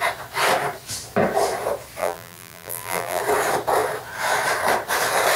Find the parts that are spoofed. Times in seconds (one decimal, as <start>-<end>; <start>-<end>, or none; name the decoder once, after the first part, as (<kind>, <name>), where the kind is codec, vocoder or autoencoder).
2.0-3.2 (vocoder, BigVGAN v2)